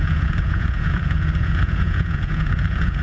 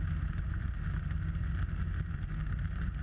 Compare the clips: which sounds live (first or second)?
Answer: second